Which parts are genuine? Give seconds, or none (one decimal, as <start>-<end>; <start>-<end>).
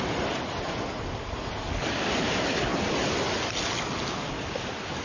0.0-5.0